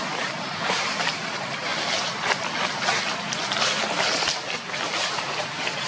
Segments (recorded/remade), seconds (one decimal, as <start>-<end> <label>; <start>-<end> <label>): 0.0-1.7 remade; 1.7-5.0 recorded; 5.0-5.9 remade